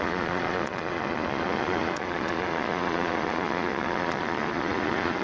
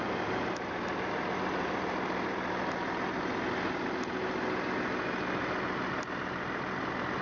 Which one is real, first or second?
second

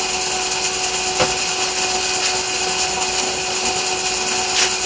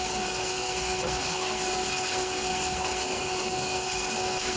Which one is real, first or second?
first